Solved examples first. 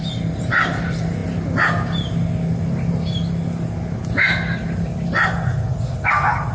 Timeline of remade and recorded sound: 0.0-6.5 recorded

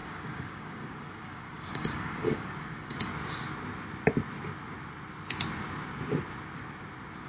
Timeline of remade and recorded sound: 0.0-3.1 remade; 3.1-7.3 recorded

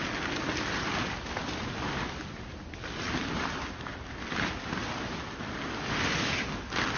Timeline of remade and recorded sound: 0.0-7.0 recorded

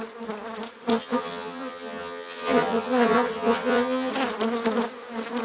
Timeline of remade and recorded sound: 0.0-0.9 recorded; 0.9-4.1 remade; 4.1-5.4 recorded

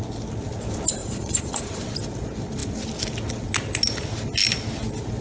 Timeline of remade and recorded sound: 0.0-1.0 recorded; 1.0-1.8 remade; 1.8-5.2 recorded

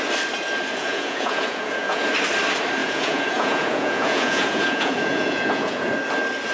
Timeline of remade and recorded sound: 0.0-0.8 recorded; 0.8-2.1 remade; 2.1-2.8 recorded; 2.8-5.9 remade; 5.9-6.5 recorded

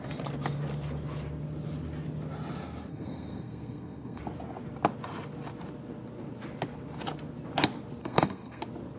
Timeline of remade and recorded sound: 0.0-2.9 recorded; 2.9-4.2 remade; 4.2-8.0 recorded; 8.0-8.6 remade; 8.6-9.0 recorded

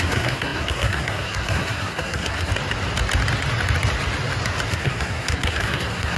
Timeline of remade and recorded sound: 0.0-2.5 remade; 2.5-4.7 recorded; 4.7-6.2 remade